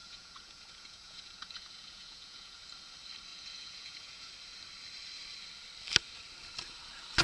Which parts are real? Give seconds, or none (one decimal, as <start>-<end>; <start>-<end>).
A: 2.6-3.3; 4.3-7.2